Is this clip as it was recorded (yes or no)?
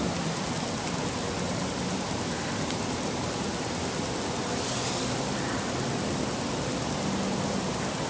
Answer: yes